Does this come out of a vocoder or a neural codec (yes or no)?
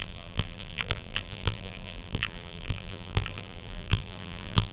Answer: yes